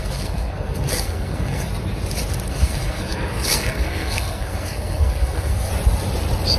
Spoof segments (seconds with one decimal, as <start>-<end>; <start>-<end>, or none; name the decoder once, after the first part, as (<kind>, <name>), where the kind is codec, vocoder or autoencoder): 0.0-1.7 (codec, SNAC); 2.5-5.7

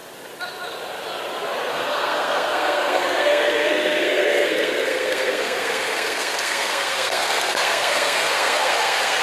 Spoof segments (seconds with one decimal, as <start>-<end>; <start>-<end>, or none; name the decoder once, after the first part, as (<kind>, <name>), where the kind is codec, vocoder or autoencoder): 1.7-9.2 (codec, SNAC)

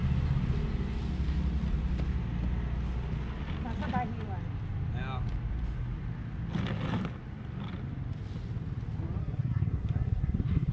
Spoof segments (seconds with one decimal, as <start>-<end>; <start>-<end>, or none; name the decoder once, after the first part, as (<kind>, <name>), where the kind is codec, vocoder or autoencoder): 9.2-10.7 (codec, SNAC)

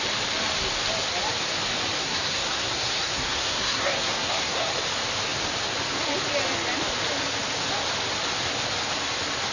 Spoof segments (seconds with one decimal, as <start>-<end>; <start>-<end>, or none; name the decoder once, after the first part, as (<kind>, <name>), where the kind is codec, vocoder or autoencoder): 2.0-4.7 (codec, SNAC)

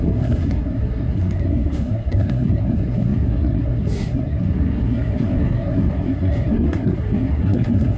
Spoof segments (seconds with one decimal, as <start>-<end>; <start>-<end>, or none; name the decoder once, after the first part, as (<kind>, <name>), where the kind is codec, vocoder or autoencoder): 0.0-8.0 (codec, SNAC)

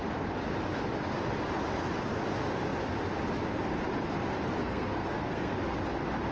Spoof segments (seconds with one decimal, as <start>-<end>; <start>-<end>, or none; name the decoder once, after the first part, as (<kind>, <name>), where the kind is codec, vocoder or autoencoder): 4.6-5.5 (codec, SNAC)